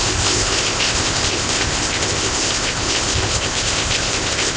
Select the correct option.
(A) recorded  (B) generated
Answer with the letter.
B